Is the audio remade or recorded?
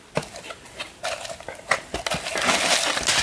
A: recorded